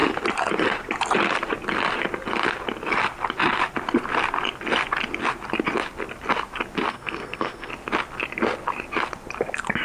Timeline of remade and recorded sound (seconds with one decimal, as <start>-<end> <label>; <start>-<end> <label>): 0.0-6.9 recorded; 6.9-7.7 remade; 7.7-9.8 recorded